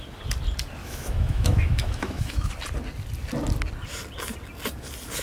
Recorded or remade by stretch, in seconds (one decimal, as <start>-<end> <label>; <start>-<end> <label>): 0.0-0.8 recorded; 0.8-2.5 remade; 2.5-5.2 recorded